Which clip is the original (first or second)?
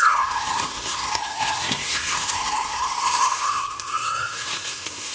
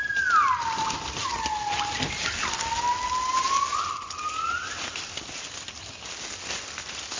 second